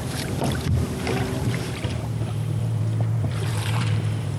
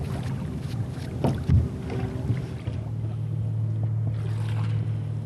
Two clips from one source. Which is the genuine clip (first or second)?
second